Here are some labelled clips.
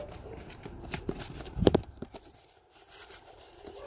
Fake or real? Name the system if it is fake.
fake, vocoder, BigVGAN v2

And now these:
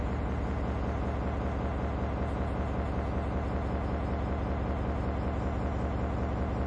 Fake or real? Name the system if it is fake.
real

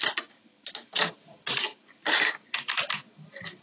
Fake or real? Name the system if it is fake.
real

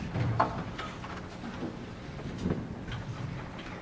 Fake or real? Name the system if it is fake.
fake, vocoder, BigVGAN v2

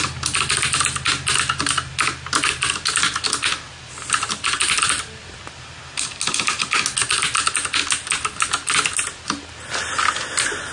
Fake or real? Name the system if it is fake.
real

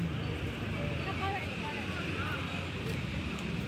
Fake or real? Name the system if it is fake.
real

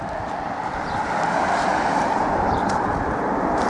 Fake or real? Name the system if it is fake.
fake, vocoder, BigVGAN v2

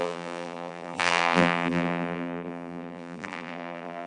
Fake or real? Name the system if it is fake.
fake, vocoder, BigVGAN v2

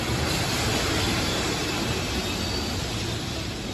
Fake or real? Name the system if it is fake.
real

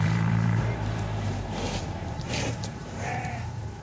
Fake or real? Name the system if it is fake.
fake, vocoder, BigVGAN v2